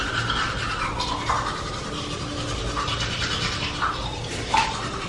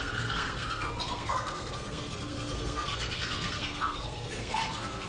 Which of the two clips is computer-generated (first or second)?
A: second